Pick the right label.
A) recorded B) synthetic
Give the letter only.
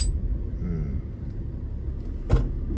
A